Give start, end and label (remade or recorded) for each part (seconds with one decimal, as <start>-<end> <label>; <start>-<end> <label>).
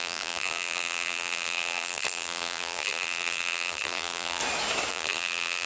0.0-4.4 remade; 4.4-4.9 recorded; 4.9-5.7 remade